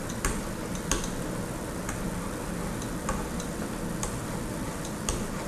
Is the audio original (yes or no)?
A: yes